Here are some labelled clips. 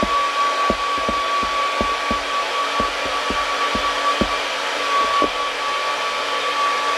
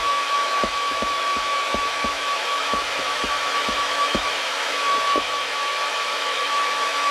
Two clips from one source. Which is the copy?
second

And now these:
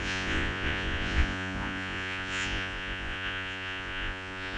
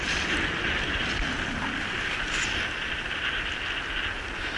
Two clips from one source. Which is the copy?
first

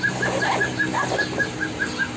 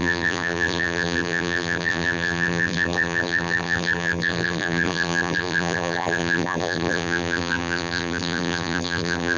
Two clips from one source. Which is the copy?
second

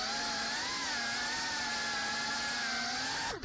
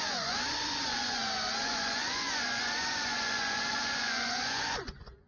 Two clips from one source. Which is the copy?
second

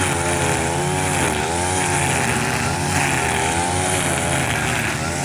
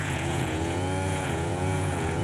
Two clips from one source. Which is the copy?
second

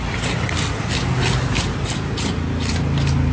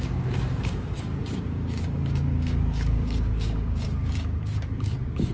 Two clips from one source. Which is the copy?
second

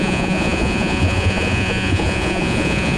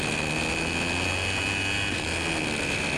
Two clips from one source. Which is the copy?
first